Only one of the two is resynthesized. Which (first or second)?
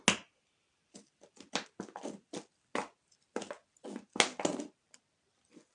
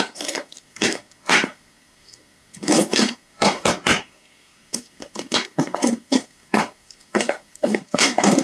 second